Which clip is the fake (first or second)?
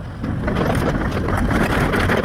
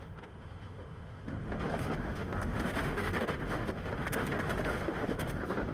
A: second